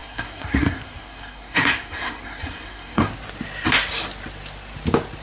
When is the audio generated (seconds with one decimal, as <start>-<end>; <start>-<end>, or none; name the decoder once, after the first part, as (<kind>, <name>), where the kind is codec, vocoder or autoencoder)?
0.0-3.1 (codec, SNAC)